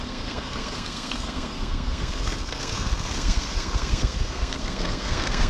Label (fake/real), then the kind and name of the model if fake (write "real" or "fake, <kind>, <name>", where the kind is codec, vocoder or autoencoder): fake, codec, SNAC